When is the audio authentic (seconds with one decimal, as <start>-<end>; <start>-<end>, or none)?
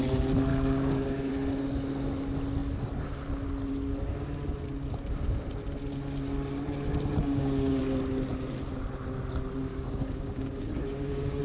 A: 0.0-0.5; 1.3-7.2; 7.8-9.7